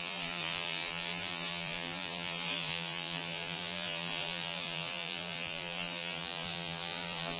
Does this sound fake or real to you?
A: fake